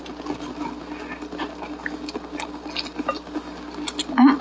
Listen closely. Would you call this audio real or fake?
real